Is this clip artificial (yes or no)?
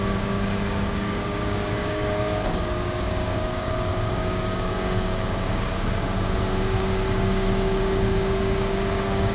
yes